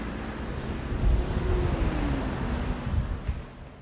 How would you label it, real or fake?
real